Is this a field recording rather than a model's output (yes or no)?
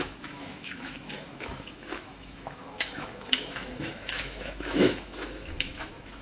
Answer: no